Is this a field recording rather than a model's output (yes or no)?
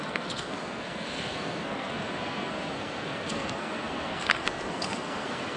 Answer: no